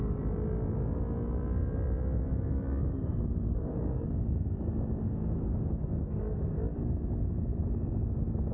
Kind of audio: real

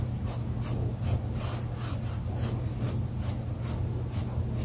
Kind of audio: real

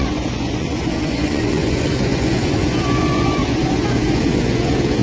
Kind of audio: fake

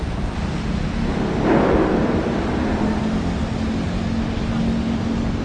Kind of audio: real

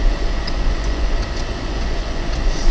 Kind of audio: fake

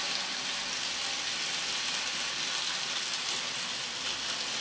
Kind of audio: real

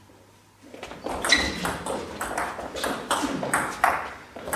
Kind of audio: real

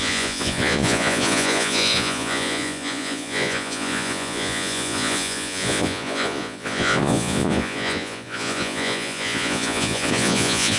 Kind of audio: fake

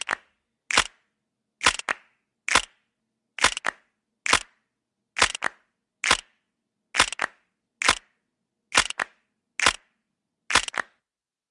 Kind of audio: real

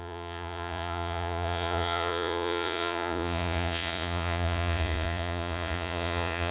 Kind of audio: fake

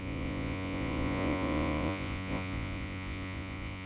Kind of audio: fake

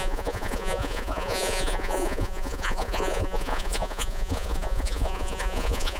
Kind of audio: fake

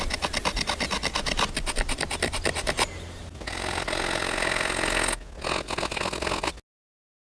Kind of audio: real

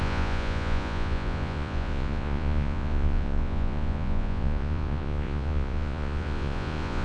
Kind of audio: fake